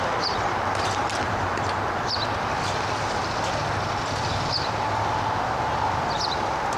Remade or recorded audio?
recorded